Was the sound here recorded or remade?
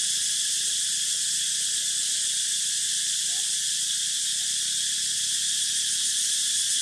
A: recorded